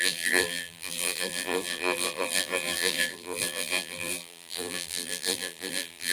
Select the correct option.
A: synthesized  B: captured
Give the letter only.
A